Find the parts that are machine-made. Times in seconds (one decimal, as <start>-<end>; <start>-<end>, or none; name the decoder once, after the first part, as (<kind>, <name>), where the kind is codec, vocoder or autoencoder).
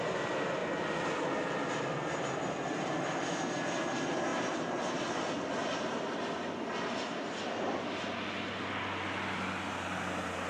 4.3-4.9 (vocoder, BigVGAN v2)